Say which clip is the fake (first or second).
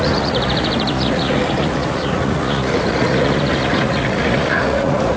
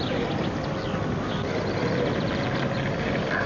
first